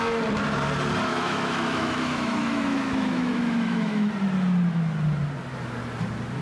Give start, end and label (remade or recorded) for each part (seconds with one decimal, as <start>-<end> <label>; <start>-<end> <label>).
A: 0.0-1.1 recorded; 1.1-4.1 remade; 4.1-6.4 recorded